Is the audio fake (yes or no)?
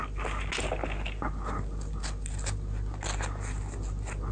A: no